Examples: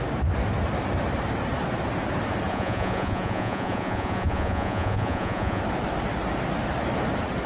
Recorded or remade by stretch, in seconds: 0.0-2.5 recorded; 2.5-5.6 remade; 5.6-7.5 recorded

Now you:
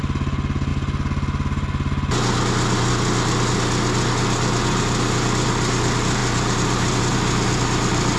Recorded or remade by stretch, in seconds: 0.0-8.2 recorded

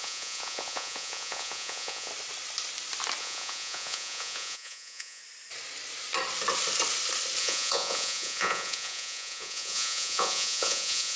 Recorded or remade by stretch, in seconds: 0.0-2.1 remade; 2.1-3.2 recorded; 3.2-5.2 remade; 5.2-7.4 recorded; 7.4-11.2 remade

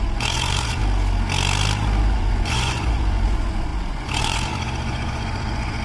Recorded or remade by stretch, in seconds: 0.0-0.8 remade; 0.8-2.0 recorded; 2.0-5.8 remade